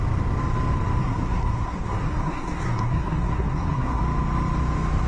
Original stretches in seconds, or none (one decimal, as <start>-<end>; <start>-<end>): 0.0-1.0; 4.0-5.1